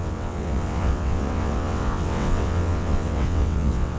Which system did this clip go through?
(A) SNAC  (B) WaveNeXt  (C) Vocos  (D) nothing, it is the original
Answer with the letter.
B